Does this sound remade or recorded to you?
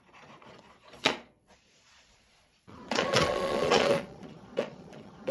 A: remade